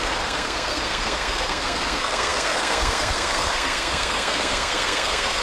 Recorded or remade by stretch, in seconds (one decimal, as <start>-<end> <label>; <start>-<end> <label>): 0.0-5.4 remade